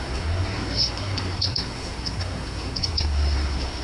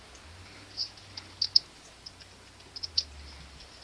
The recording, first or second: second